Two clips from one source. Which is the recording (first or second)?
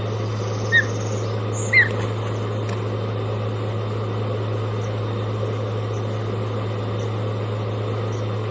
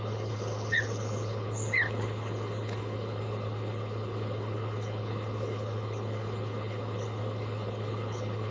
first